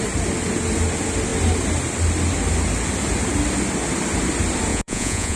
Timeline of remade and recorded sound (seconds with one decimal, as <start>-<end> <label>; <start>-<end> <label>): 0.0-4.7 recorded; 4.7-5.4 remade